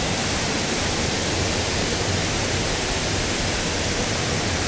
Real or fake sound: fake